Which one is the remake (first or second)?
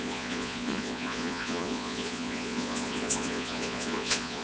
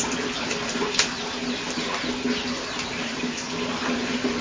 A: first